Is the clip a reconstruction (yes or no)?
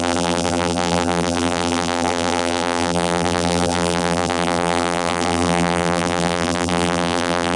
yes